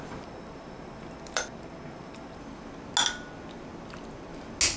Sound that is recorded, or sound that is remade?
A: recorded